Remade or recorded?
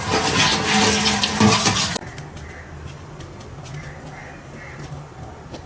recorded